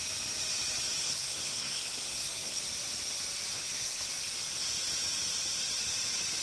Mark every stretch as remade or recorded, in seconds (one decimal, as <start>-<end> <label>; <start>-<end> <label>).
0.0-1.0 recorded; 1.0-2.6 remade; 2.6-3.5 recorded; 3.5-4.1 remade; 4.1-6.4 recorded